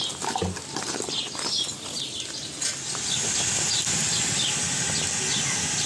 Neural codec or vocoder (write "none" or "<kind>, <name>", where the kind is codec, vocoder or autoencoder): none